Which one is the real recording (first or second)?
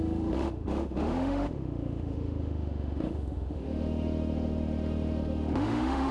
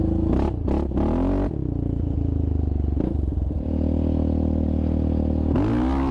second